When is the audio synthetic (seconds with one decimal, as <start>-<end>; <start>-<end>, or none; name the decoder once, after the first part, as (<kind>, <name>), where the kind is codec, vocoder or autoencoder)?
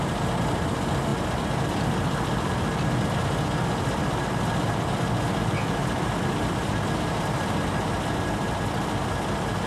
5.8-6.8 (vocoder, BigVGAN v2)